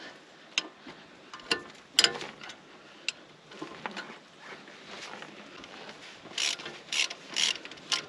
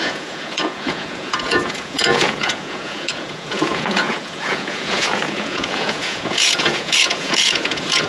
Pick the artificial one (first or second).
second